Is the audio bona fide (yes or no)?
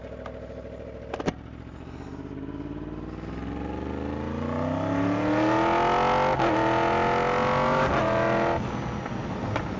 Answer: yes